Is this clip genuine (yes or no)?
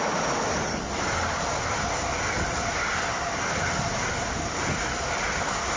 yes